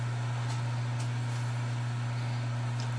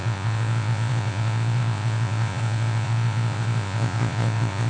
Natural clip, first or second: first